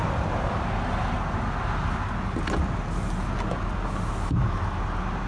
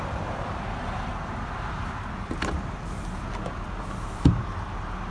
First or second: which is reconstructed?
second